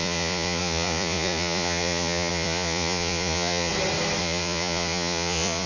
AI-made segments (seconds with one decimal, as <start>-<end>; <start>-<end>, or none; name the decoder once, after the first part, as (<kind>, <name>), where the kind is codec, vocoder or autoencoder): 0.0-3.7 (vocoder, Vocos); 4.2-5.7